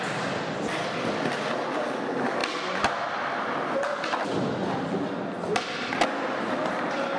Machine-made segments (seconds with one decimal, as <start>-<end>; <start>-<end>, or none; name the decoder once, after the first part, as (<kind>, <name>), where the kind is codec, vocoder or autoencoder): none